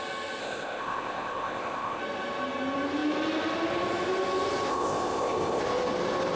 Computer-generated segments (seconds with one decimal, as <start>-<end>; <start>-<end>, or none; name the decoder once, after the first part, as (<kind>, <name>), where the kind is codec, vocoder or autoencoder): 0.4-2.0 (codec, ZipCodec); 4.7-5.6